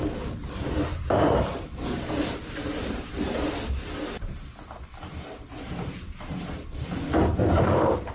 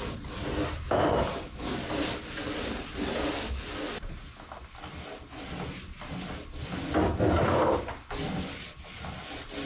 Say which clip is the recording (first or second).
second